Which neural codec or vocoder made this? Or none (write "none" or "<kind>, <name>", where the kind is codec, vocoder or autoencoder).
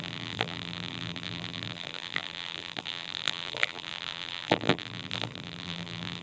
vocoder, BigVGAN v2